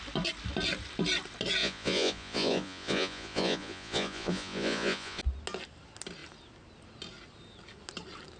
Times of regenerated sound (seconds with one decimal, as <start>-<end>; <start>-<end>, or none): 1.6-5.2